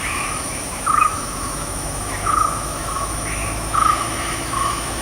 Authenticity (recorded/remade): remade